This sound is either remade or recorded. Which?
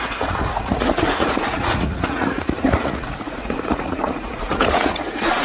remade